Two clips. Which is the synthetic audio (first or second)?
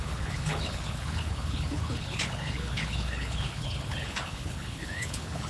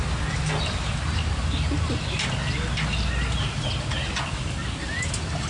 first